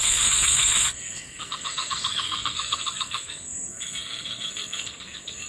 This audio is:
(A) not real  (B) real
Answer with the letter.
A